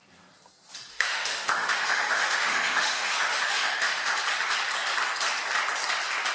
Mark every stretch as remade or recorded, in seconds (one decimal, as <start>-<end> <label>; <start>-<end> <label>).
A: 0.0-0.9 recorded; 0.9-4.1 remade; 4.1-6.3 recorded